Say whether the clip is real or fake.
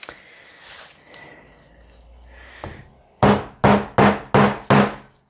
real